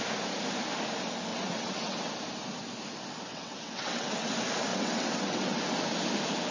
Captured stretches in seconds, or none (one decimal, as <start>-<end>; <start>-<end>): 0.0-1.3; 2.1-3.3; 4.3-4.7; 5.6-6.5